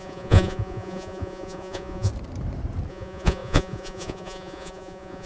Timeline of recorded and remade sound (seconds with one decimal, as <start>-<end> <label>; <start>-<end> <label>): 0.0-2.1 remade; 2.1-2.9 recorded; 2.9-5.3 remade